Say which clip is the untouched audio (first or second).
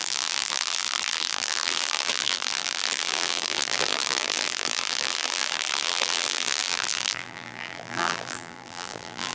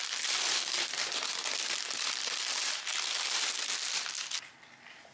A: second